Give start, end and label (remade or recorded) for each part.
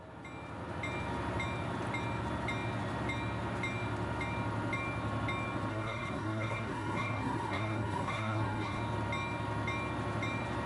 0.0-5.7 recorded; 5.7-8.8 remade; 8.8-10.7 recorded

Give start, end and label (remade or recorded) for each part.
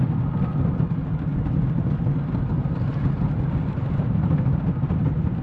0.0-5.4 recorded